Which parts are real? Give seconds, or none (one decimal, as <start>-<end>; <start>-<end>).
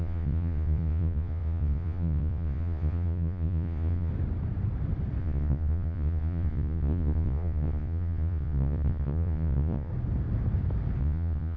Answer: 4.1-5.2; 9.9-11.0